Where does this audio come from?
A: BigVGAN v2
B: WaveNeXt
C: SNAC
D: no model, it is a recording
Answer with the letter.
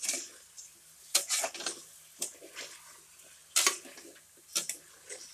D